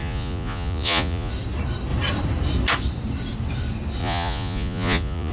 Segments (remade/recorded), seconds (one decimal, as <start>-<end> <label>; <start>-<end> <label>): 0.0-1.3 remade; 1.3-4.0 recorded; 4.0-5.3 remade